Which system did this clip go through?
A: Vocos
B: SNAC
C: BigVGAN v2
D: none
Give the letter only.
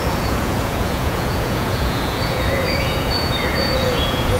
A